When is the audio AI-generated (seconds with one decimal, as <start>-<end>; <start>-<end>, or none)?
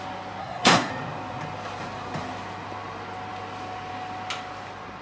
0.4-0.9